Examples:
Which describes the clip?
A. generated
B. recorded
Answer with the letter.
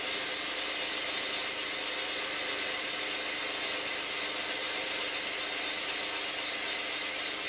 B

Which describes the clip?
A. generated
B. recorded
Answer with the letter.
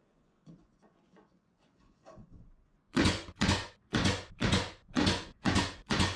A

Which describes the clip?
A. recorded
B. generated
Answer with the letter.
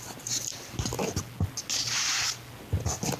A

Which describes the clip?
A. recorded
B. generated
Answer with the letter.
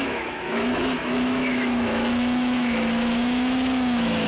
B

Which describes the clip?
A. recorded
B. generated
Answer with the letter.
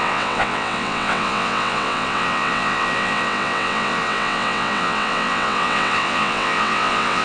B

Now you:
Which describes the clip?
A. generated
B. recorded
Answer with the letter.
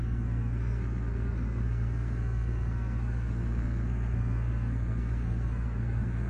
A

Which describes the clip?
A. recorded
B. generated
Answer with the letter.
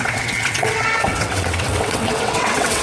B